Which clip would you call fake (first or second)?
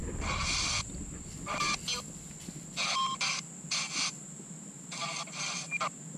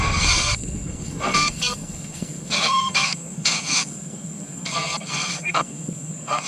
second